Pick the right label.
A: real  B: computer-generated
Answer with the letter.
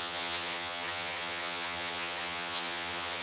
B